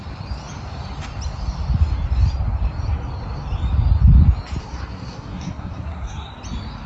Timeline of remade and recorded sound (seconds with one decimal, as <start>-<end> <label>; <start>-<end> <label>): 0.0-4.6 recorded; 4.6-6.3 remade; 6.3-6.9 recorded

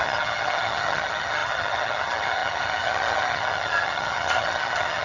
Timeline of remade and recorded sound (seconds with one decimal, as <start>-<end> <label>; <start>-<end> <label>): 0.0-5.0 remade

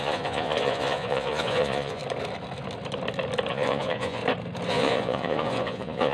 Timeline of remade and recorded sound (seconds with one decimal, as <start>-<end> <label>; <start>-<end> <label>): 0.0-2.0 remade; 2.0-3.5 recorded; 3.5-4.2 remade; 4.2-4.7 recorded; 4.7-6.1 remade

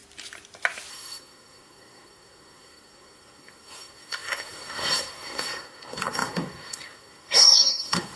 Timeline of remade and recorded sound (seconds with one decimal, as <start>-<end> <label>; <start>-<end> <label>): 0.0-0.9 recorded; 0.9-8.2 remade

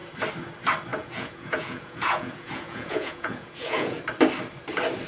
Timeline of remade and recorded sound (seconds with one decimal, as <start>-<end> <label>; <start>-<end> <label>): 0.0-0.9 recorded; 0.9-4.0 remade; 4.0-5.1 recorded

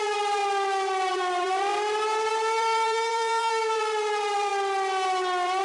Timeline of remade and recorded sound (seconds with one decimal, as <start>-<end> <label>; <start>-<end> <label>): 0.0-0.4 remade; 0.4-1.1 recorded; 1.1-1.7 remade; 1.7-2.3 recorded; 2.3-4.5 remade; 4.5-5.6 recorded

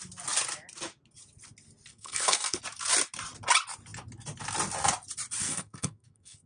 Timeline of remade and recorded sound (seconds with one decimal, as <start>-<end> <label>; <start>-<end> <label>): 0.0-1.9 recorded; 1.9-2.6 remade; 2.6-5.4 recorded; 5.4-6.5 remade